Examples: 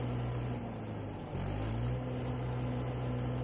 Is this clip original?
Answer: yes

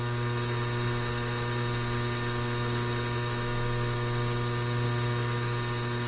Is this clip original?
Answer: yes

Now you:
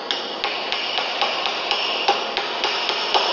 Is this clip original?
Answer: yes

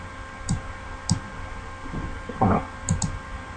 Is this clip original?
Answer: yes